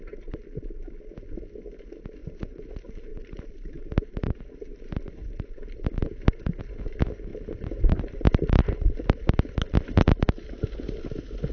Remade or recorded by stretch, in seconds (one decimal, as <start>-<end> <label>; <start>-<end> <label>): 0.0-2.2 recorded; 2.2-2.7 remade; 2.7-3.1 recorded; 3.1-6.6 remade; 6.6-7.3 recorded; 7.3-10.9 remade; 10.9-11.5 recorded